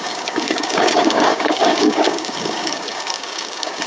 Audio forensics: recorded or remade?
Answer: remade